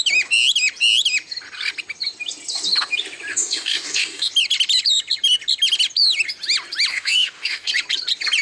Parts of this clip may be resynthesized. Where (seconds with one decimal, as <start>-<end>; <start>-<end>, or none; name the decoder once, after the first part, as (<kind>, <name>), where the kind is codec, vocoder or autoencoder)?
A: 3.3-4.3 (codec, DAC); 6.9-7.7